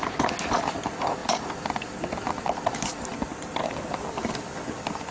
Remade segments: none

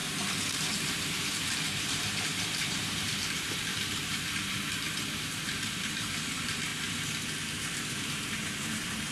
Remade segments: 0.0-6.7 (vocoder, BigVGAN v2); 7.6-9.1

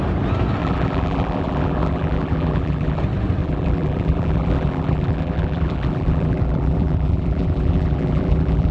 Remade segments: 0.6-3.0 (vocoder, BigVGAN v2); 3.4-8.7

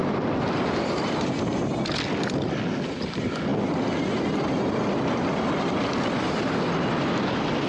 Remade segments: none

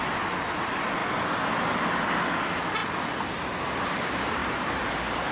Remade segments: 4.4-5.3 (vocoder, BigVGAN v2)

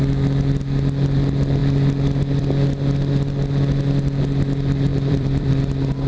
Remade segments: 4.9-5.5 (vocoder, BigVGAN v2)